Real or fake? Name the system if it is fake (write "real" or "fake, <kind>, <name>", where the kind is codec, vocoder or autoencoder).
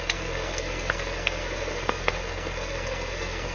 fake, codec, SNAC